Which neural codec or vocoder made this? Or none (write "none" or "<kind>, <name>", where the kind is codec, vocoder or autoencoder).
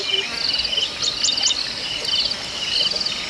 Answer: none